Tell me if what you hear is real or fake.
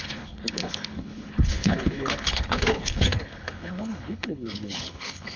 fake